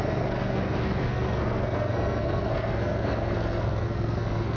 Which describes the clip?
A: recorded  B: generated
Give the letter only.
B